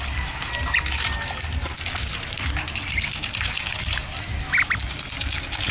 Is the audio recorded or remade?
recorded